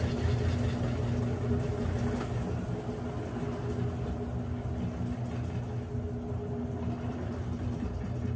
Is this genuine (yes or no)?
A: yes